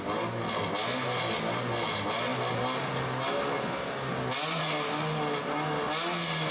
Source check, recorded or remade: recorded